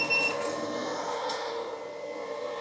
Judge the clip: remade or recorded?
recorded